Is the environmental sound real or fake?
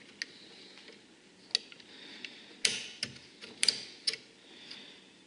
real